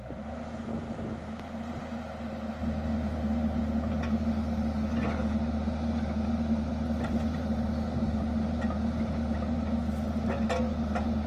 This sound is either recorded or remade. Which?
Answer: recorded